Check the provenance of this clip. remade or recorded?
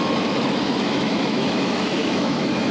remade